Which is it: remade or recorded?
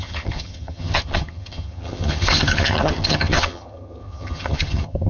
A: remade